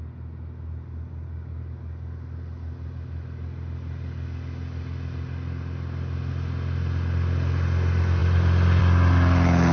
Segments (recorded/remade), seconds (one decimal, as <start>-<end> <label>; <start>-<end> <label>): 0.0-9.7 recorded